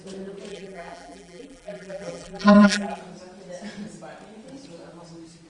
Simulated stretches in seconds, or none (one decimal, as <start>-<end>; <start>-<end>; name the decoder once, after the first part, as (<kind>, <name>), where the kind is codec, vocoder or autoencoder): 0.5-3.0 (vocoder, BigVGAN v2)